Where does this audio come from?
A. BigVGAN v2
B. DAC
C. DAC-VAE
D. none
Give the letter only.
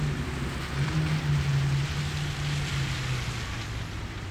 D